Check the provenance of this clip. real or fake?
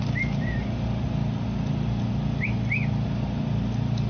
real